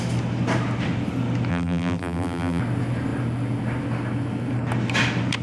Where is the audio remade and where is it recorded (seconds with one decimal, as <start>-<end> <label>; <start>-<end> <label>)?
0.0-1.5 recorded; 1.5-2.6 remade; 2.6-5.4 recorded